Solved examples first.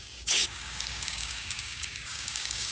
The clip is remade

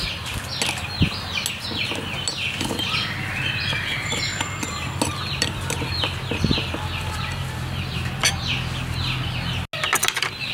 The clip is recorded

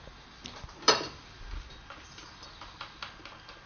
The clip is recorded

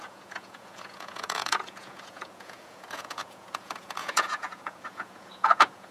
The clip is remade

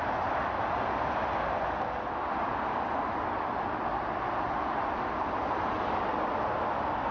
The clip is recorded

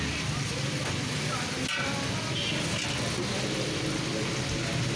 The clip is recorded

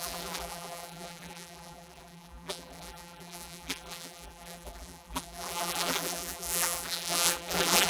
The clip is remade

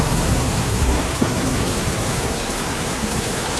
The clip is remade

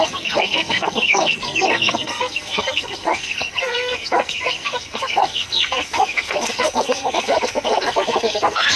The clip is remade